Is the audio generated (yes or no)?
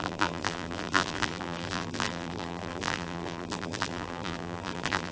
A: yes